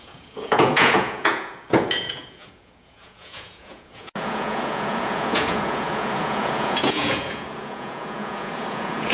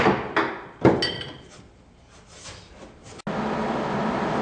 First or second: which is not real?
first